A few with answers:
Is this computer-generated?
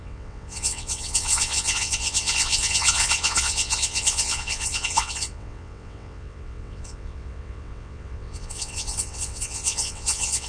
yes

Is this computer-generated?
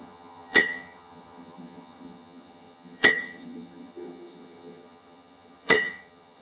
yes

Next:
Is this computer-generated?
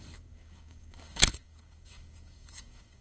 yes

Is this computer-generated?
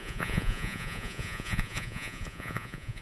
yes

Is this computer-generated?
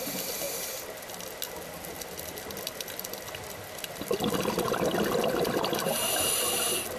no